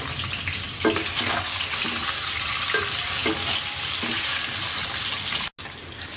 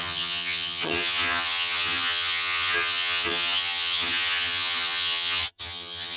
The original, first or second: first